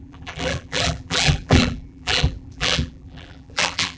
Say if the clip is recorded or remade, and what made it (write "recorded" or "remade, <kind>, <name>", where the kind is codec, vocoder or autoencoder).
remade, vocoder, BigVGAN v2